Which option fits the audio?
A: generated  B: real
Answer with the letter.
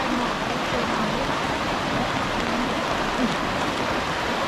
A